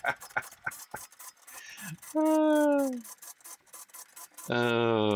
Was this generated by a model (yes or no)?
no